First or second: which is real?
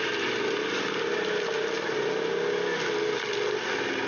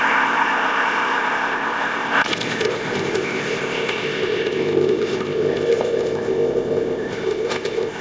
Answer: first